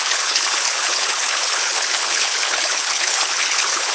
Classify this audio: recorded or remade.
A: remade